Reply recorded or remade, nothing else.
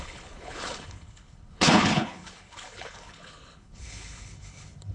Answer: remade